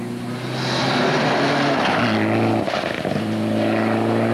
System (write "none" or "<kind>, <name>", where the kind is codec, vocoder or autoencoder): none